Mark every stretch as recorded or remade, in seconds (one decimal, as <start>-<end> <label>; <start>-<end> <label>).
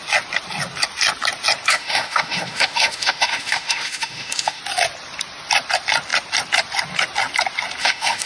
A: 0.0-1.7 recorded; 1.7-4.6 remade; 4.6-7.8 recorded; 7.8-8.3 remade